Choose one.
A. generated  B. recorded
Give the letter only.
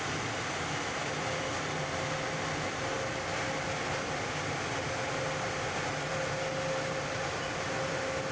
B